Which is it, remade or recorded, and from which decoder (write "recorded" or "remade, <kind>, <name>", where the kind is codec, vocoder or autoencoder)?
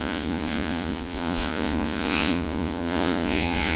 remade, vocoder, Vocos